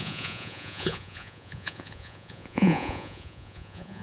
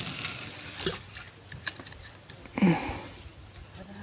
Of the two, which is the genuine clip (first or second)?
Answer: second